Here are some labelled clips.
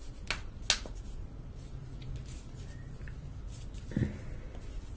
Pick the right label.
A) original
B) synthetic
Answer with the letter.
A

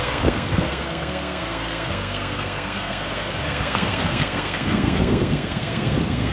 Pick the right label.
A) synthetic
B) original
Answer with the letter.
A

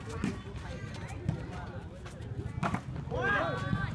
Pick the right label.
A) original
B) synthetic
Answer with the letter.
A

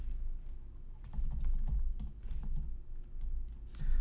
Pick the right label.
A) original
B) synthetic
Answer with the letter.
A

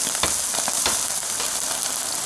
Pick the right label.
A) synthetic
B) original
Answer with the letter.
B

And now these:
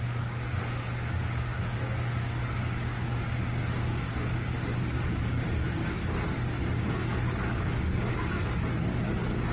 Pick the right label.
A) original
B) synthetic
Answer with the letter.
B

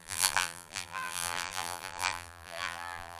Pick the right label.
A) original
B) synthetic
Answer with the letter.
B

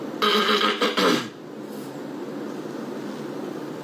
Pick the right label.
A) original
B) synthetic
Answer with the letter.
A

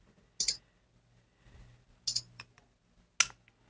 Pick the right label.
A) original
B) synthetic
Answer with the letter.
A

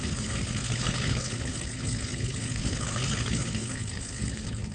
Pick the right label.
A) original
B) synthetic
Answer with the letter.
B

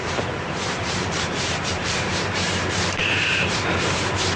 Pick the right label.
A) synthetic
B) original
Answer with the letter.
A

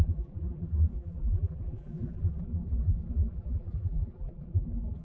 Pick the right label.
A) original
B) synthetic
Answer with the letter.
B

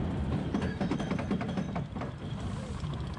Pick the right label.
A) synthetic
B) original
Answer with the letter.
A